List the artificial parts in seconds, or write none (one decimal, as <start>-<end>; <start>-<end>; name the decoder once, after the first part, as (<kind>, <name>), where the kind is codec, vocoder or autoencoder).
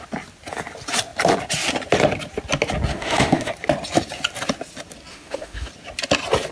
2.9-3.5 (autoencoder, DAC-VAE); 5.1-5.7